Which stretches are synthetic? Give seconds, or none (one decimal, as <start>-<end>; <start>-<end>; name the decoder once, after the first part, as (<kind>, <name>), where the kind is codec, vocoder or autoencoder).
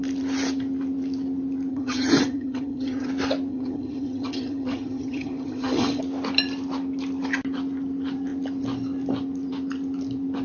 1.7-3.1 (vocoder, HiFi-GAN); 3.5-6.0